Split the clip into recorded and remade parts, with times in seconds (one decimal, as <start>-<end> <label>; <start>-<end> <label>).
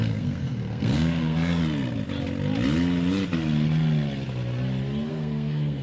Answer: 0.0-1.6 remade; 1.6-5.1 recorded; 5.1-5.8 remade